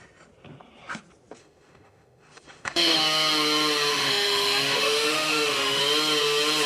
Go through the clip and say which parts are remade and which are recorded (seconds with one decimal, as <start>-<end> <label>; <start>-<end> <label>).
0.0-1.4 recorded; 1.4-3.0 remade; 3.0-3.9 recorded; 3.9-5.8 remade; 5.8-6.7 recorded